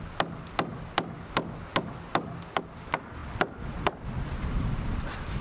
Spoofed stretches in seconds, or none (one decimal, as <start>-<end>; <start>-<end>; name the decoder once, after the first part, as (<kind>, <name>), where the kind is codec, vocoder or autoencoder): none

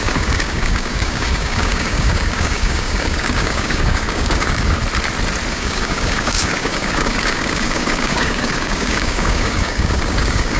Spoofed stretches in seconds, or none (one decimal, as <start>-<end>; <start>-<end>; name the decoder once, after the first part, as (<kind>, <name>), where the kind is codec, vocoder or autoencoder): 0.0-4.8 (codec, DAC); 5.5-10.6

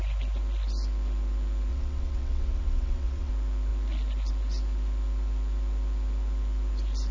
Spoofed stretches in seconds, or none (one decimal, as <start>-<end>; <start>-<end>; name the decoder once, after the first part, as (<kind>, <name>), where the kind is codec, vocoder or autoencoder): 1.7-3.3 (vocoder, WaveNeXt)

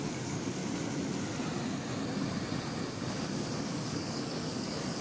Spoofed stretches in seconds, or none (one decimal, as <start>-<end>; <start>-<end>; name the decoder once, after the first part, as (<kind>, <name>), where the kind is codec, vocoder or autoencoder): 0.0-0.6 (codec, DAC); 3.6-5.0

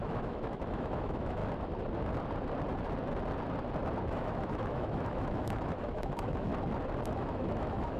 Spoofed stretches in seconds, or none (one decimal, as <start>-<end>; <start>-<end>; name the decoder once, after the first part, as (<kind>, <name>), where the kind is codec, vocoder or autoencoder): 0.0-1.4 (autoencoder, DAC-VAE); 4.1-6.5; 7.1-8.0

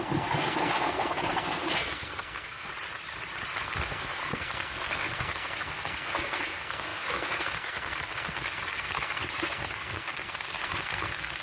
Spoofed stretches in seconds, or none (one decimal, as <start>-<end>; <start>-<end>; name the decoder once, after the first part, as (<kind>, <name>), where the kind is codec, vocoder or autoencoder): 0.0-2.7 (codec, SNAC); 3.6-11.4

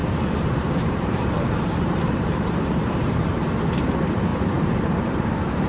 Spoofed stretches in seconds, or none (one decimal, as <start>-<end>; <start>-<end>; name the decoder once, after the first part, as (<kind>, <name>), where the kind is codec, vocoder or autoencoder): 0.0-3.4 (vocoder, BigVGAN v2); 4.3-5.7

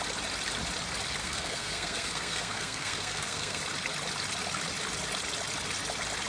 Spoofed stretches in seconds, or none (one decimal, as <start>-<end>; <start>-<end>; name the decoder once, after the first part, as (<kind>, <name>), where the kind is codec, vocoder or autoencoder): 1.2-3.6 (codec, SNAC)